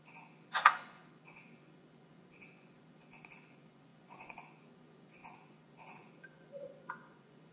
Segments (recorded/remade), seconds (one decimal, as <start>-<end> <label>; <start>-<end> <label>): 0.0-7.5 remade

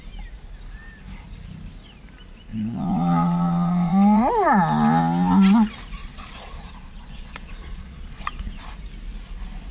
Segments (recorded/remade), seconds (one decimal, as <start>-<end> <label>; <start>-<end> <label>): 0.0-2.5 recorded; 2.5-4.3 remade; 4.3-6.0 recorded; 6.0-8.6 remade; 8.6-9.7 recorded

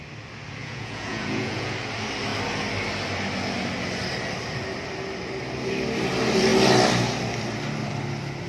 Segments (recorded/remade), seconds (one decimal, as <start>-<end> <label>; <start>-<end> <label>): 0.0-0.6 recorded; 0.6-1.7 remade; 1.7-8.5 recorded

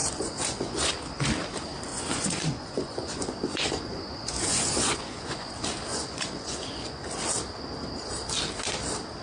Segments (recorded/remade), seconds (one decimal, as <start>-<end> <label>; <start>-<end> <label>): 0.0-0.9 remade; 0.9-1.9 recorded; 1.9-5.5 remade; 5.5-5.9 recorded; 5.9-7.0 remade; 7.0-9.2 recorded

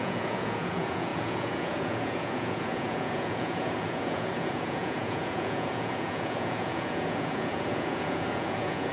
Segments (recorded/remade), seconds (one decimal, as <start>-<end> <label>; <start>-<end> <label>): 0.0-8.9 remade